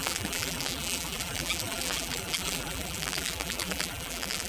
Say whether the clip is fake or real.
fake